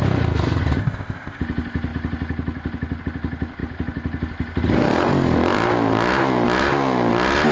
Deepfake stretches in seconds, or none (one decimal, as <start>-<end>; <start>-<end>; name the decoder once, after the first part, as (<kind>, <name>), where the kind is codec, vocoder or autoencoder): 0.8-1.4 (codec, ZipCodec)

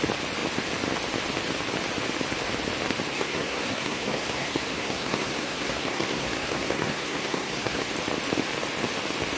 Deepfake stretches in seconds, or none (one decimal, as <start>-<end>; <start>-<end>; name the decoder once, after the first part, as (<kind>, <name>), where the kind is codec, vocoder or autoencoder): 3.1-7.9 (codec, SNAC)

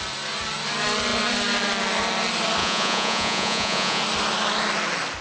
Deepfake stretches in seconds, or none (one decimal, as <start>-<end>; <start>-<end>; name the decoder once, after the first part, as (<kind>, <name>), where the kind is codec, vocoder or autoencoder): 2.6-4.0 (vocoder, Vocos)

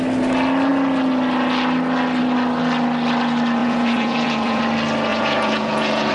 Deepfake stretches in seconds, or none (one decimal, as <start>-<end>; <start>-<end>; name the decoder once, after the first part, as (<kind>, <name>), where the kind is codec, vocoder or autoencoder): 3.6-4.6 (vocoder, Vocos); 5.1-6.1